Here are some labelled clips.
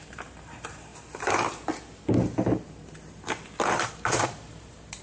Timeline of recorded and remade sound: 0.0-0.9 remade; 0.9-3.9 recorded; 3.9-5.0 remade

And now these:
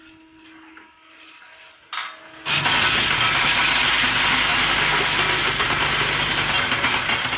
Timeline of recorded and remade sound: 0.0-7.4 recorded

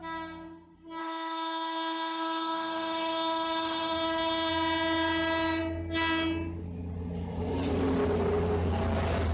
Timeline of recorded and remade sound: 0.0-1.0 recorded; 1.0-4.5 remade; 4.5-9.3 recorded

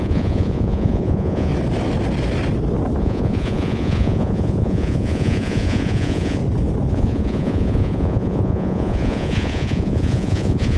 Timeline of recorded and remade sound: 0.0-1.5 remade; 1.5-3.0 recorded; 3.0-6.4 remade; 6.4-6.9 recorded; 6.9-10.8 remade

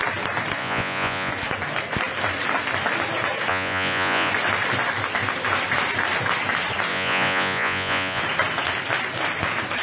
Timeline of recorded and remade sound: 0.0-0.6 recorded; 0.6-1.3 remade; 1.3-3.5 recorded; 3.5-4.3 remade; 4.3-6.9 recorded; 6.9-8.2 remade; 8.2-9.8 recorded